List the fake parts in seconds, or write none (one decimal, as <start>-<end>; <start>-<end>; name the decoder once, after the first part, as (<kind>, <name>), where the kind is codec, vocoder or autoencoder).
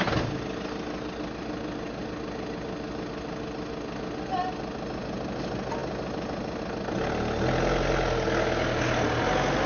none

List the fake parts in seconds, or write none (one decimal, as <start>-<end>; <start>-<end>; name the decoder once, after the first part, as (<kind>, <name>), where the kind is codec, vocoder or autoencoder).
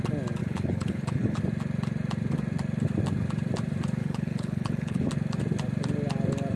0.4-1.4 (codec, HILCodec); 4.0-5.1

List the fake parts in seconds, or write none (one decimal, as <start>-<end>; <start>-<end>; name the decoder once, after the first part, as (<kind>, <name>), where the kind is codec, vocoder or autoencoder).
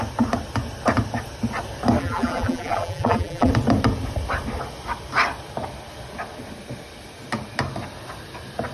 2.0-3.5 (vocoder, BigVGAN v2)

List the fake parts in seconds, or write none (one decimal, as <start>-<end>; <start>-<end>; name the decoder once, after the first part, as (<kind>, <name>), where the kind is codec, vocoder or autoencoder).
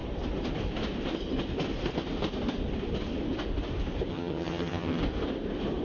4.1-5.0 (vocoder, HiFi-GAN)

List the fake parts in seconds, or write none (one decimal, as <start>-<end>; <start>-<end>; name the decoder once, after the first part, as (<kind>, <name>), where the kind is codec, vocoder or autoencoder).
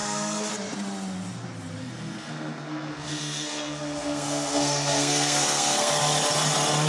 0.0-0.5 (codec, SNAC); 1.8-5.9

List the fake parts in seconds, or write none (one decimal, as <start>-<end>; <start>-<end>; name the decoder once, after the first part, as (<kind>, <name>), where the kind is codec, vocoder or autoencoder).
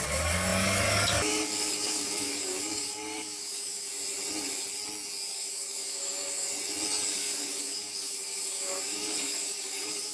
0.0-3.9 (codec, DAC); 5.3-6.5; 7.1-10.1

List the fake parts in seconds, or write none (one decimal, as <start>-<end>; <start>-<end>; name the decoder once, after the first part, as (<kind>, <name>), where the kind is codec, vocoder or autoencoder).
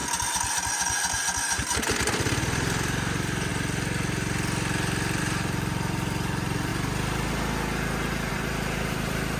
2.1-3.5 (vocoder, BigVGAN v2); 5.2-6.7; 8.3-9.4